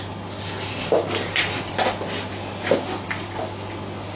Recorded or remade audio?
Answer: recorded